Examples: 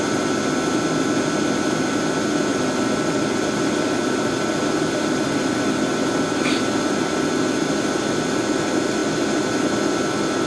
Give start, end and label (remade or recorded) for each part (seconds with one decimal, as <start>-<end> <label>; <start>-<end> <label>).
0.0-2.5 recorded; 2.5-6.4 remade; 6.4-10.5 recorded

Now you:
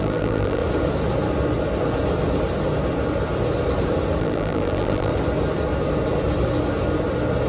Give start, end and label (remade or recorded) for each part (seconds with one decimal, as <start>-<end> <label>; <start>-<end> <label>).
0.0-0.6 remade; 0.6-4.2 recorded; 4.2-5.1 remade; 5.1-7.5 recorded

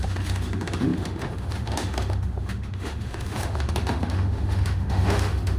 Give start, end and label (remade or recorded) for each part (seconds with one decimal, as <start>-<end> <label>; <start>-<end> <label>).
0.0-5.6 remade